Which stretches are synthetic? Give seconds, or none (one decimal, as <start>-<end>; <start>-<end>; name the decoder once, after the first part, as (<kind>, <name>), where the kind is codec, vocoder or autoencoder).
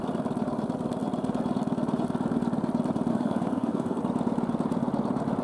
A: 3.1-4.0 (codec, SNAC)